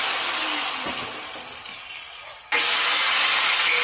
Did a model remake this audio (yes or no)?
no